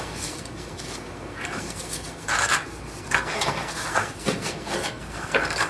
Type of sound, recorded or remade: remade